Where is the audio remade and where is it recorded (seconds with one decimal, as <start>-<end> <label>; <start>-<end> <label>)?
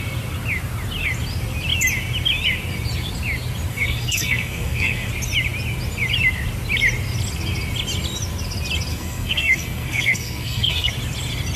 0.0-3.7 recorded; 3.7-5.1 remade; 5.1-8.9 recorded; 8.9-10.9 remade; 10.9-11.6 recorded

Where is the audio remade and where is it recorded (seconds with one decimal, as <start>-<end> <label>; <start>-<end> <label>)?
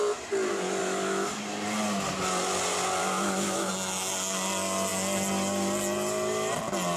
0.0-0.8 recorded; 0.8-1.4 remade; 1.4-3.0 recorded; 3.0-3.7 remade; 3.7-7.0 recorded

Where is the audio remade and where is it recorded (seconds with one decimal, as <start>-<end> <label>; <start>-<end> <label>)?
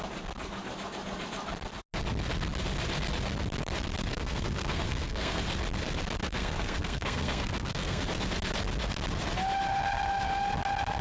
0.0-4.1 recorded; 4.1-5.4 remade; 5.4-6.2 recorded; 6.2-8.0 remade; 8.0-11.0 recorded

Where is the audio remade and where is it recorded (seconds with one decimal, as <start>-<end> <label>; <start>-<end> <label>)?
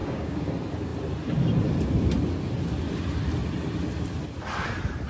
0.0-0.5 remade; 0.5-5.1 recorded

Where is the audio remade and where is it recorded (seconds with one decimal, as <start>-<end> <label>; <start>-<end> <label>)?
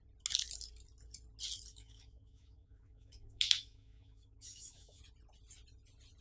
0.0-1.7 recorded; 1.7-5.0 remade; 5.0-6.2 recorded